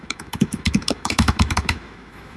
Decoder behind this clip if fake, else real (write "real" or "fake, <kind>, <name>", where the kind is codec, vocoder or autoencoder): fake, autoencoder, DAC-VAE